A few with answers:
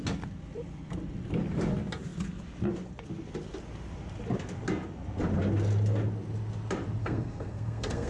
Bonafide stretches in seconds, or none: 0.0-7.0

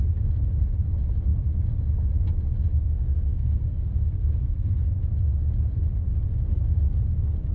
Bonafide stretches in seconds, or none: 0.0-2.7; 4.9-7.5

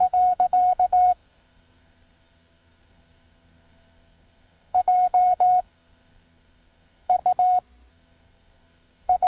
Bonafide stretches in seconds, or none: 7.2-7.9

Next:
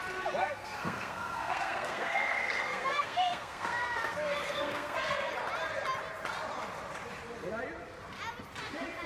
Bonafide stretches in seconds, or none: 0.0-0.4; 5.3-9.1

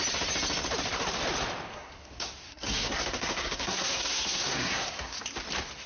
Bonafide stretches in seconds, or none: 0.0-1.7; 5.2-5.9